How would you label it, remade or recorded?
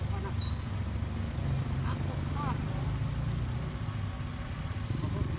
recorded